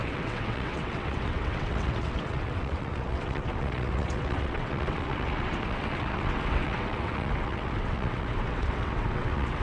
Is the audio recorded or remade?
remade